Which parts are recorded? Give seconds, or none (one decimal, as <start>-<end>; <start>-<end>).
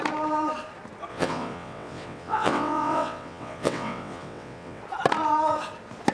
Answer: 0.0-1.1; 4.8-6.1